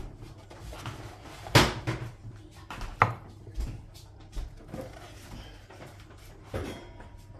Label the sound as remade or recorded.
recorded